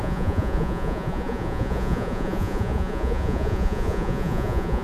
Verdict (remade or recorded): remade